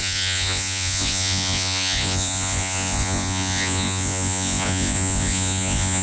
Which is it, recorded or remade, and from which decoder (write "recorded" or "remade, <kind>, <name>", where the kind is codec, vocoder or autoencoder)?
remade, vocoder, Vocos